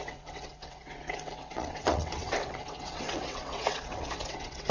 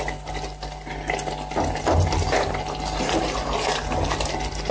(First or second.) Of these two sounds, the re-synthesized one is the first